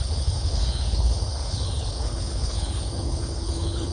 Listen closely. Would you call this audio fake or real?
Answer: fake